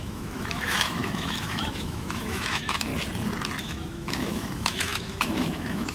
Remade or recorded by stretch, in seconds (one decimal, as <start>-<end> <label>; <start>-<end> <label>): 0.0-2.9 remade; 2.9-3.6 recorded; 3.6-5.9 remade